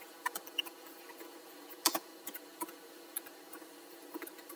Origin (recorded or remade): remade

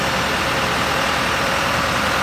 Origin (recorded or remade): recorded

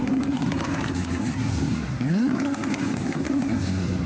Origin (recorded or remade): remade